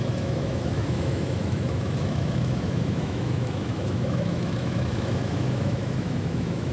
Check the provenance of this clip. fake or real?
fake